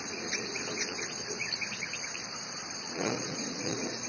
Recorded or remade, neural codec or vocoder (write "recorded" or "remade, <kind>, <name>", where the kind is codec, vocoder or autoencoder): remade, vocoder, Vocos